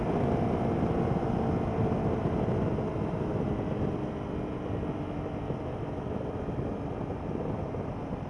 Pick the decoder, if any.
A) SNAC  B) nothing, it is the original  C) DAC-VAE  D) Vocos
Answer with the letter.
B